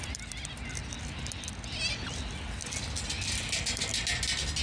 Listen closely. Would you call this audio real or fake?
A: real